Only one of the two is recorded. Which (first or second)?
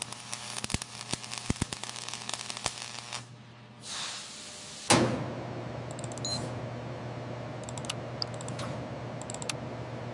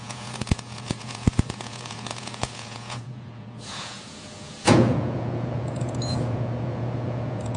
first